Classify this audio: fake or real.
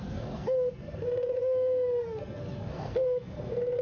fake